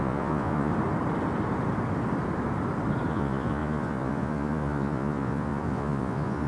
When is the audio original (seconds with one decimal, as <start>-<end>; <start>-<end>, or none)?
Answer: 0.7-3.1